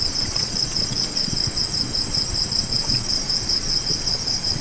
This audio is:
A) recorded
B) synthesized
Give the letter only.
B